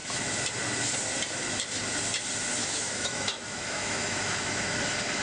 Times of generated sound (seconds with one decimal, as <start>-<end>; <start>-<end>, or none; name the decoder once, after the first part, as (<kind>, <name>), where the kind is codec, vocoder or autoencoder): 2.6-4.8 (autoencoder, DAC-VAE)